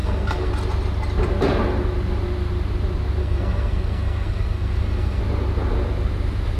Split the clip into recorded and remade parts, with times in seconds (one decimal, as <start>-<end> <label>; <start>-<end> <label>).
0.0-0.5 remade; 0.5-3.2 recorded; 3.2-5.2 remade; 5.2-6.6 recorded